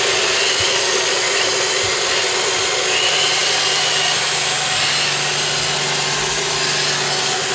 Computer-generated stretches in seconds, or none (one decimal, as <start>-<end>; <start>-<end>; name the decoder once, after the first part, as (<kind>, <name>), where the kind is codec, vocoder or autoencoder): none